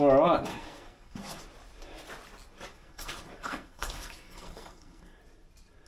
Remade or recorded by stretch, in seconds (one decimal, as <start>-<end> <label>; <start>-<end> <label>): 0.0-0.5 recorded; 0.5-1.4 remade; 1.4-2.7 recorded; 2.7-5.2 remade; 5.2-5.9 recorded